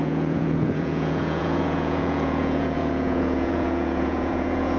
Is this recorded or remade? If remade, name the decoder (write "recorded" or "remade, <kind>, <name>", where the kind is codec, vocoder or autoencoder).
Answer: remade, vocoder, Vocos